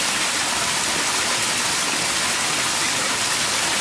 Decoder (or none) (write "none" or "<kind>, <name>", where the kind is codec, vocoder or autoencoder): none